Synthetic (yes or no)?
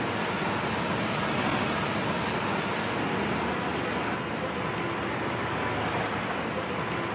no